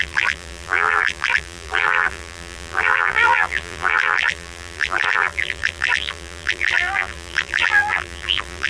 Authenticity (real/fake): fake